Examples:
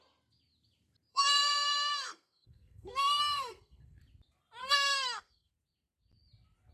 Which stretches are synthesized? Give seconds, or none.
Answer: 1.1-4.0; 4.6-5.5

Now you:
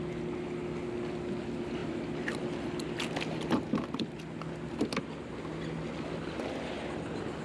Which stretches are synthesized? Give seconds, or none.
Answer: none

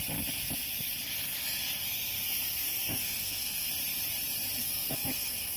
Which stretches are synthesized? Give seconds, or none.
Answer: 1.8-3.7; 4.6-5.6

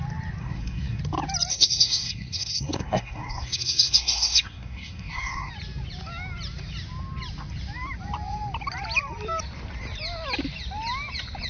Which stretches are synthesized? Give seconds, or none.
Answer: 0.4-1.0; 1.5-5.5

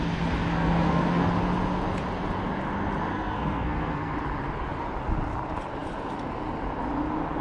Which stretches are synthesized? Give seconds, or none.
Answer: 0.5-1.3; 3.1-4.1

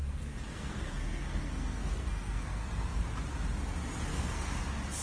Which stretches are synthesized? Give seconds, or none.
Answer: 0.0-3.0; 4.1-4.6

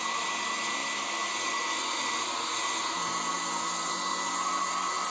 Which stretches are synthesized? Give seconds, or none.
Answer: none

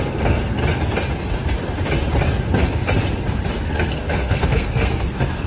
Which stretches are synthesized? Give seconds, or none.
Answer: 0.0-0.6; 3.6-5.5